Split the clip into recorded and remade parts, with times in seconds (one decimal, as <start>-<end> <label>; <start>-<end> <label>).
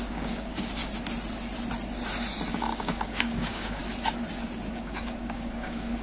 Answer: 0.0-0.8 remade; 0.8-2.5 recorded; 2.5-3.8 remade; 3.8-4.7 recorded; 4.7-6.0 remade